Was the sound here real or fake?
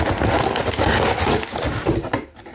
real